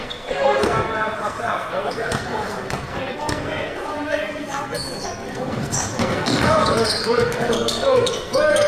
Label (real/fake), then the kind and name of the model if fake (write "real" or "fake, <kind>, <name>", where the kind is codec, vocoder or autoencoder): fake, codec, SNAC